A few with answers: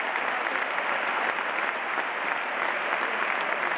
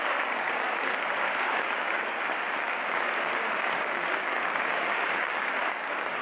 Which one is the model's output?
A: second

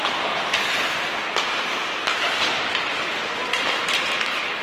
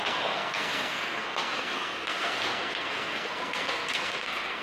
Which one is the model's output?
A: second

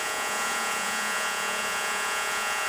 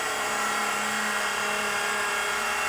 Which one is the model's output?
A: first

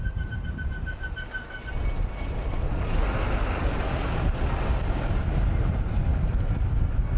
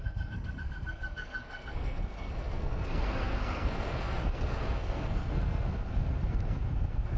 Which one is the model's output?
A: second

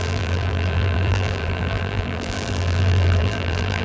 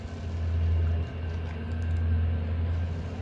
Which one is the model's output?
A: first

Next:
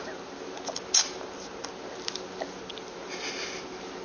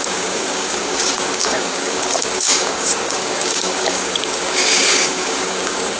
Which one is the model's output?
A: second